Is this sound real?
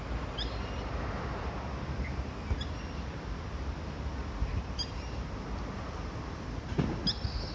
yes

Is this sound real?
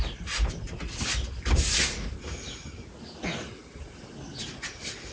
yes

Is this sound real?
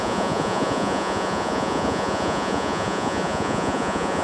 no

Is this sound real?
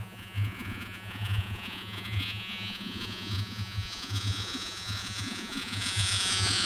no